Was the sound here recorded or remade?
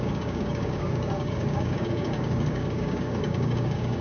remade